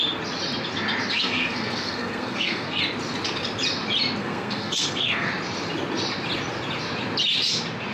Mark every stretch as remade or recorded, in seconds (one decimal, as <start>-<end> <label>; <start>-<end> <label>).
0.0-1.1 recorded; 1.1-2.8 remade; 2.8-4.2 recorded; 4.2-5.3 remade; 5.3-7.9 recorded